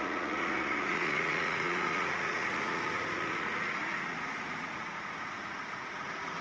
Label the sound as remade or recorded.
remade